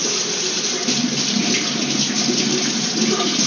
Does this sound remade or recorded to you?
recorded